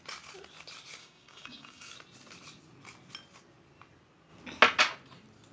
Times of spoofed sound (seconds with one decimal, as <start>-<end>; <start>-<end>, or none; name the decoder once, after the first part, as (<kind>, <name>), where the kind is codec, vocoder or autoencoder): 1.0-1.9 (codec, DAC)